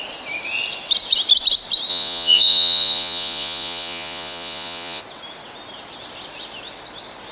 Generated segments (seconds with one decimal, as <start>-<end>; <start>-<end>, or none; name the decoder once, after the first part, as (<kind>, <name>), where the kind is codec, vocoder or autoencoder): 1.9-5.0 (vocoder, Vocos)